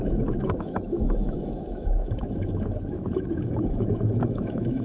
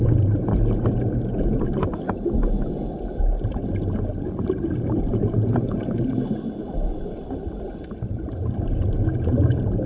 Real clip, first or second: second